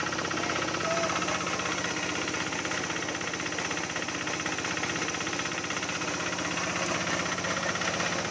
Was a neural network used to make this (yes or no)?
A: no